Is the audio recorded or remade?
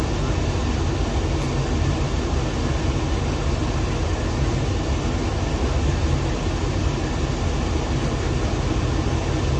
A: recorded